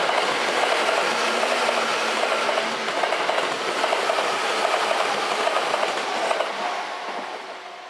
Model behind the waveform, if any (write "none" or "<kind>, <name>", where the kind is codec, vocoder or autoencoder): none